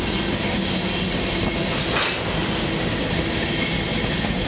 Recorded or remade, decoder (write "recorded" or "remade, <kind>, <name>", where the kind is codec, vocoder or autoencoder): recorded